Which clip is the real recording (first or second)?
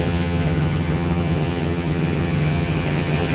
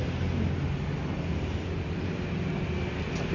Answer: second